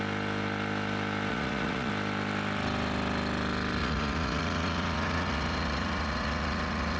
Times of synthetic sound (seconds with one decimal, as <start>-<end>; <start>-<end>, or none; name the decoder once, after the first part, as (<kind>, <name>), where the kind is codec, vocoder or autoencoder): 1.3-1.9 (vocoder, Vocos); 3.8-7.0